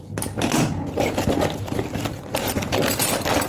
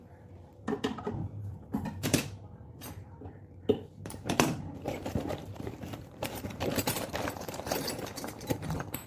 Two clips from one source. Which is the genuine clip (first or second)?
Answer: first